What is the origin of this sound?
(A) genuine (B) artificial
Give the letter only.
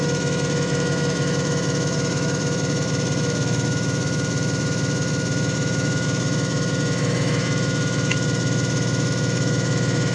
B